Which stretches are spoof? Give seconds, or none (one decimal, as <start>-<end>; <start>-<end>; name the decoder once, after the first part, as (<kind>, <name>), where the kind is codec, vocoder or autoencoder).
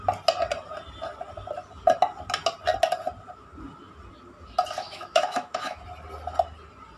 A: 4.8-5.8 (autoencoder, DAC-VAE)